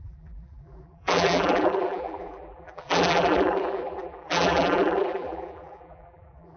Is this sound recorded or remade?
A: remade